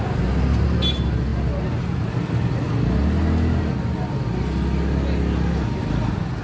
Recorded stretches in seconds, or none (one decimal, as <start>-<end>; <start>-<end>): 0.0-6.4